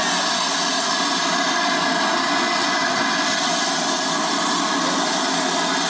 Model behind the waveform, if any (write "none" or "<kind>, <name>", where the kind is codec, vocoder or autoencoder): none